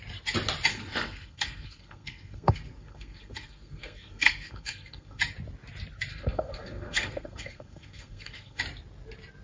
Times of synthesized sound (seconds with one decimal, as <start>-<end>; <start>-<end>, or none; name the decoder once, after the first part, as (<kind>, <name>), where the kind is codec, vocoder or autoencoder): 0.7-5.2 (codec, SNAC); 6.1-8.6